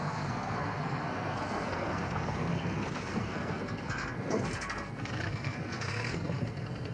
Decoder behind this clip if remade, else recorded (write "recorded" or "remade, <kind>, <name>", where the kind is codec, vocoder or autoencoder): remade, codec, SNAC